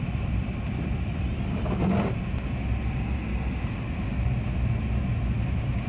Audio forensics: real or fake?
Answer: real